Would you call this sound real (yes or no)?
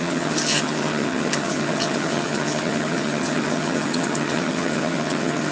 no